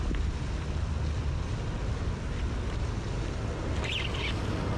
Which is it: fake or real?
real